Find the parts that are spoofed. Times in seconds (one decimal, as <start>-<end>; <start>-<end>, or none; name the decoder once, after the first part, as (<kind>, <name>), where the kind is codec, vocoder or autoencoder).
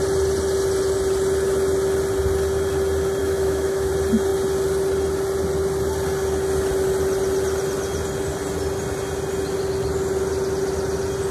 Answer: 3.2-3.9 (autoencoder, DAC-VAE)